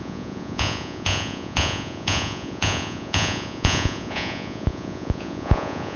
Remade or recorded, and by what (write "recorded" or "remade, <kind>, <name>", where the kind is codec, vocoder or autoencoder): remade, vocoder, Vocos